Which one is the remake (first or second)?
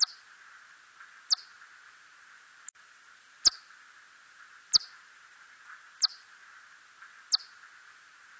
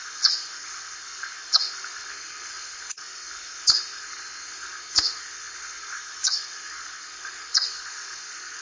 second